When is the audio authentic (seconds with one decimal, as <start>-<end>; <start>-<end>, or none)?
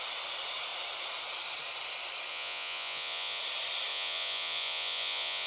0.0-2.3; 3.4-3.9